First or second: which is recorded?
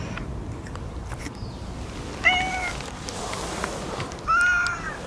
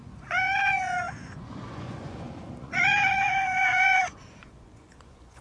first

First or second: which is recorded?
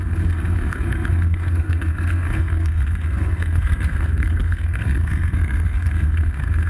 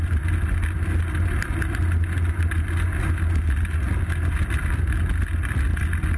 second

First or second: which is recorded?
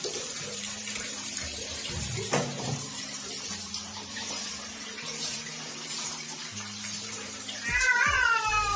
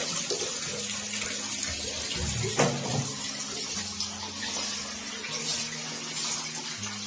second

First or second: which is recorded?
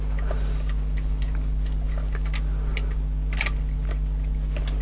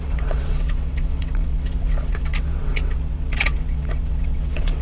first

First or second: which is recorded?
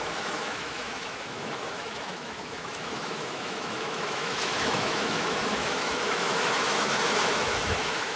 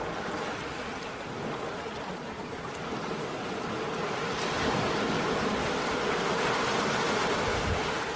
second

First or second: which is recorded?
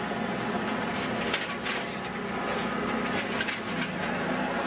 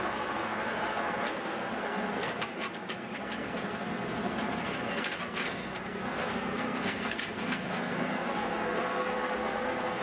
first